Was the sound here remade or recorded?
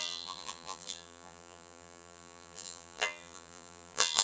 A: remade